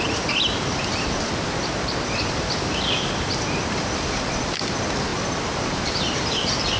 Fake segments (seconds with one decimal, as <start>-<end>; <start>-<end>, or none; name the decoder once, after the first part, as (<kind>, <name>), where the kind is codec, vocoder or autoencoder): 0.0-6.8 (vocoder, BigVGAN v2)